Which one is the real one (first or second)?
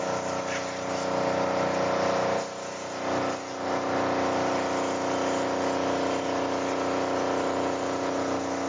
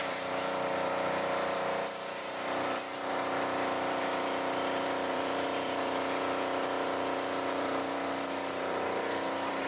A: first